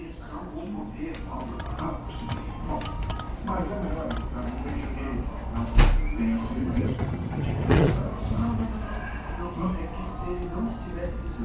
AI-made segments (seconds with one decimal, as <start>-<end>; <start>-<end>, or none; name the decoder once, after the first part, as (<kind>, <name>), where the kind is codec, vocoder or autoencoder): 6.6-7.9 (vocoder, HiFi-GAN)